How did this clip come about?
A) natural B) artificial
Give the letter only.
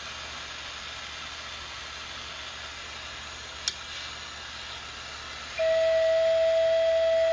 A